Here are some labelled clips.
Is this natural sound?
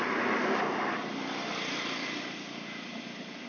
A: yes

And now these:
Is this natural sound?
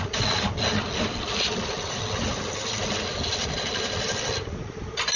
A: yes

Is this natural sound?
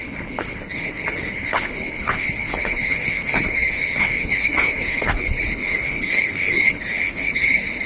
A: no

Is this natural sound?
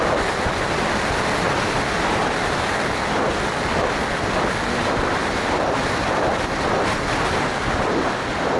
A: yes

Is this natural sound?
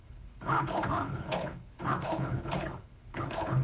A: no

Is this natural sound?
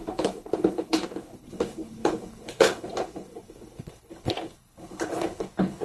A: no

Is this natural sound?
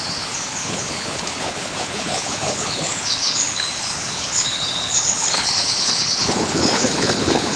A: no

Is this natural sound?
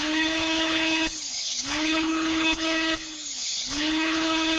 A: no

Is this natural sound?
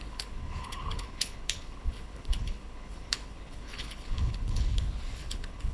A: no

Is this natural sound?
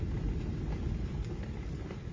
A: yes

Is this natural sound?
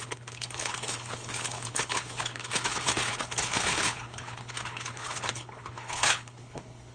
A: no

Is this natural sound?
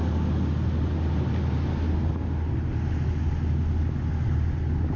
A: yes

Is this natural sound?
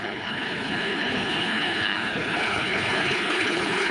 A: no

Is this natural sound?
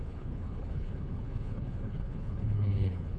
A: no